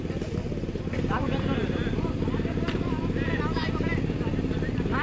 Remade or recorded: recorded